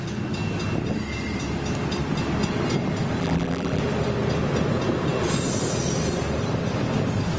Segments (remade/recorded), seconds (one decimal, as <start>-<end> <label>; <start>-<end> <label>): 0.0-3.2 recorded; 3.2-3.8 remade; 3.8-7.4 recorded